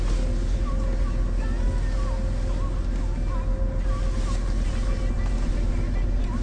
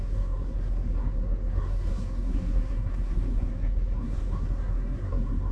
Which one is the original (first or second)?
first